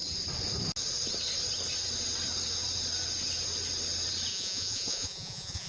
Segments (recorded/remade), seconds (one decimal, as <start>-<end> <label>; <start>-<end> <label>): 0.0-4.3 recorded; 4.3-5.7 remade